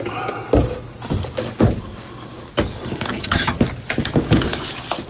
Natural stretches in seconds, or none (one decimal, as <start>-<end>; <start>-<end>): 0.0-3.1; 3.6-5.1